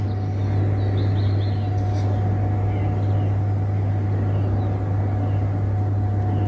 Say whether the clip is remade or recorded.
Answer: recorded